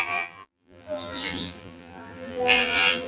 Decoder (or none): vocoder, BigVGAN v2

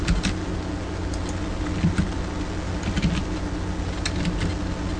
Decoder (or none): none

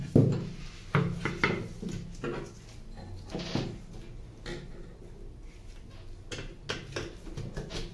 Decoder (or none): none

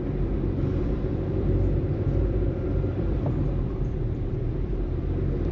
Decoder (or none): vocoder, BigVGAN v2